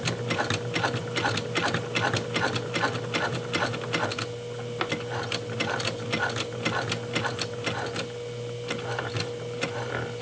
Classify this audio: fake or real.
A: real